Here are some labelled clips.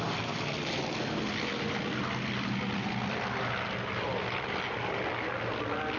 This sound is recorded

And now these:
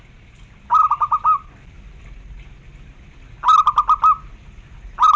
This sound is recorded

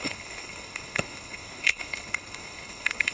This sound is remade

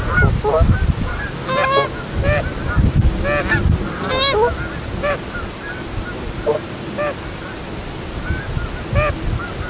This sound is recorded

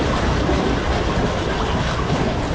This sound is recorded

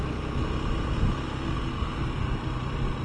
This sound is recorded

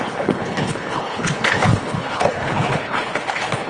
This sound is remade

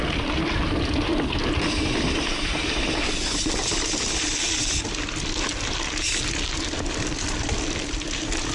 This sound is recorded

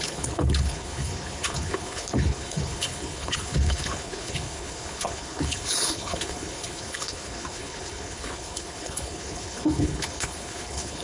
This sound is remade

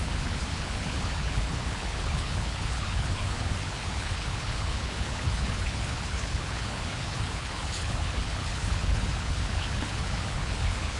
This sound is remade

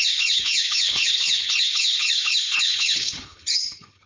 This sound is remade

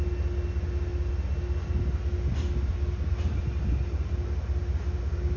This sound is recorded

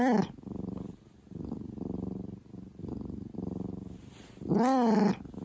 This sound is recorded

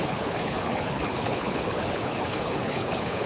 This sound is remade